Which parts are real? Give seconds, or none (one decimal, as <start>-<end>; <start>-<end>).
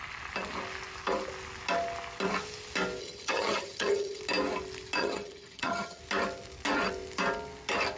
0.0-3.0; 4.2-5.0; 6.0-8.0